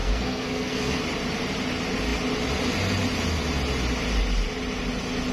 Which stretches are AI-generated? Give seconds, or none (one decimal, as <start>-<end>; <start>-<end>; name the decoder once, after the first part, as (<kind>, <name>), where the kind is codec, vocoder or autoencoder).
0.0-1.0 (codec, SNAC)

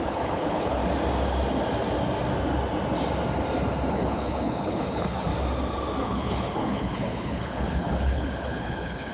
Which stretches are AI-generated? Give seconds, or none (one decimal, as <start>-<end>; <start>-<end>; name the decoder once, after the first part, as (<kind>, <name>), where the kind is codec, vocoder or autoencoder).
0.0-0.8 (codec, HILCodec); 3.9-5.3; 6.0-9.1

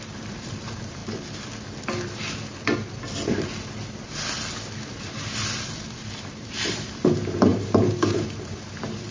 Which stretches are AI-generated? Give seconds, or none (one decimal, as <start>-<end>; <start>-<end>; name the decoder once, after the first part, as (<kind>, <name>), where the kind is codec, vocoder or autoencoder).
0.0-1.0 (vocoder, BigVGAN v2); 6.2-9.1

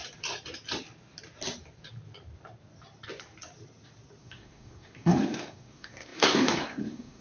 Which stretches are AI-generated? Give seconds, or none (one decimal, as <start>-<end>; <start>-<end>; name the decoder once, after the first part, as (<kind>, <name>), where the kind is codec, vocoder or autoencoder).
4.2-7.2 (codec, SNAC)

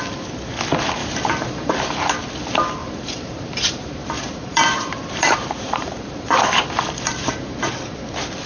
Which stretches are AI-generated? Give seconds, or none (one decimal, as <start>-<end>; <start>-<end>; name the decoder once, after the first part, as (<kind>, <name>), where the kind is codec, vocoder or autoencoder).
1.0-1.7 (vocoder, BigVGAN v2); 2.8-7.7

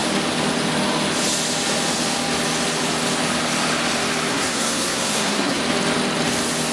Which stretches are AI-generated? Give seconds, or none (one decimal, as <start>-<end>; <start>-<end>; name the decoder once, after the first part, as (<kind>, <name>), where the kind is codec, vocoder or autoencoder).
4.3-5.6 (codec, SNAC)

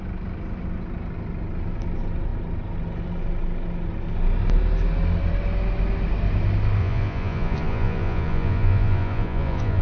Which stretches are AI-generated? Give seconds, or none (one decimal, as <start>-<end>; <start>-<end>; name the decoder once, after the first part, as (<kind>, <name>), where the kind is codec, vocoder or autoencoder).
6.8-9.8 (vocoder, Vocos)

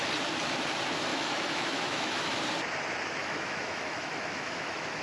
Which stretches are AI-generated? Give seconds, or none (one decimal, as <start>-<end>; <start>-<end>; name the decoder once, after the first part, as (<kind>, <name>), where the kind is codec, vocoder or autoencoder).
1.1-2.4 (autoencoder, DAC-VAE); 3.2-5.0